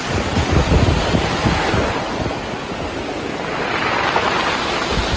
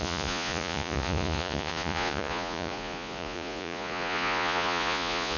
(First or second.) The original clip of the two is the first